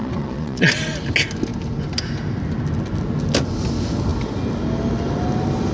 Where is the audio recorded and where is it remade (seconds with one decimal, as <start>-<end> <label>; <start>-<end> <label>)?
0.0-0.7 remade; 0.7-5.7 recorded